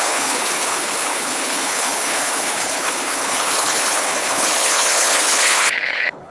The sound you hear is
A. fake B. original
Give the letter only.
A